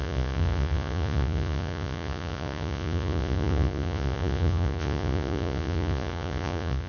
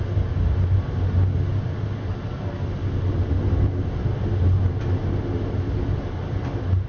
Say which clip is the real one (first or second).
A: second